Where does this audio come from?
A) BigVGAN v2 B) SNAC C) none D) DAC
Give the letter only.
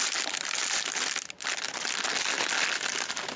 C